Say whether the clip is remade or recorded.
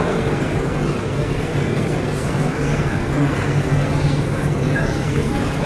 remade